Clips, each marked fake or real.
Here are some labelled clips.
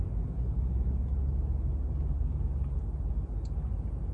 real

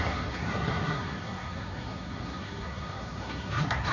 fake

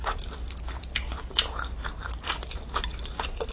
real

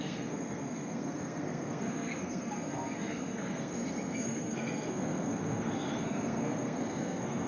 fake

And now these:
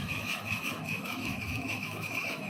fake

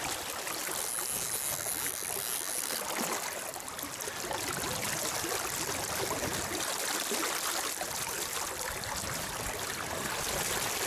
real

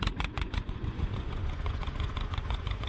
fake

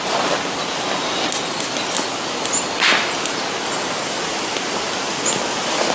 real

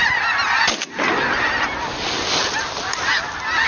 real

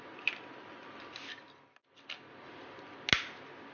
real